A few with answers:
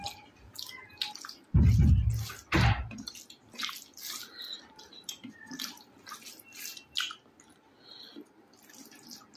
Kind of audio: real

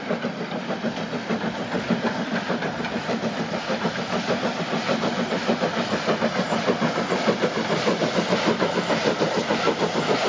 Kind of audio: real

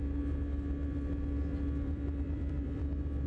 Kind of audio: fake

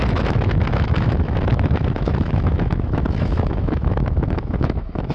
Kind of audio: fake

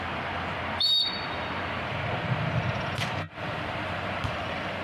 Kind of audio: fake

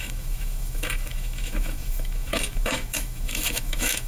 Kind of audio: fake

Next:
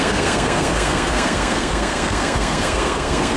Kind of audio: fake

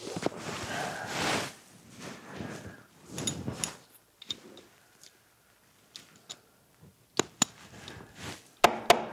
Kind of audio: real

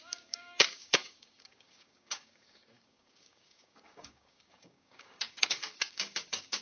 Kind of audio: fake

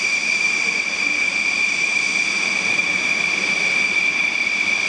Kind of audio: fake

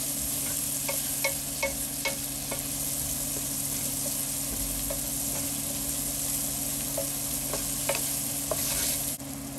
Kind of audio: real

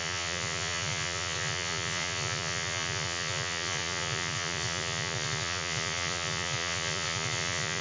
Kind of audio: fake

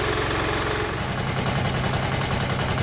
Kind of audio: real